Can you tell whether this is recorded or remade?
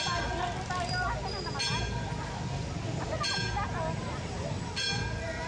recorded